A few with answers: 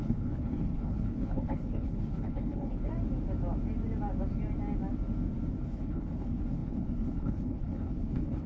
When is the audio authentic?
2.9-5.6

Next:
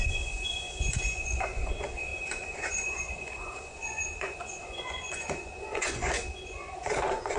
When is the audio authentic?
none

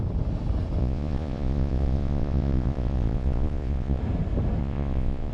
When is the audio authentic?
0.0-0.8; 4.0-4.6

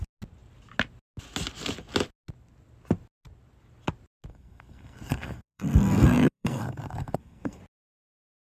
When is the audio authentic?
0.0-4.3; 7.6-8.5

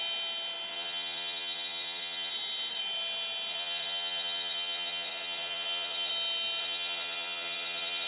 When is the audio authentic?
0.0-0.7; 2.3-3.5; 6.1-6.6

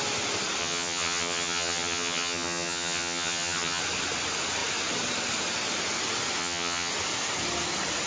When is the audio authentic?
0.0-0.6; 3.8-6.4; 6.9-8.1

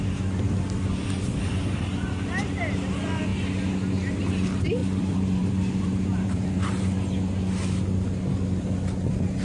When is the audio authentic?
0.0-4.8; 6.7-9.4

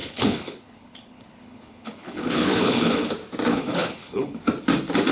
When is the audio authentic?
3.1-3.5; 4.4-5.1